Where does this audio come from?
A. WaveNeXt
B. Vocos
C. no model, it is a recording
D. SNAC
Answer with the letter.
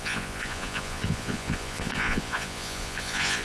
B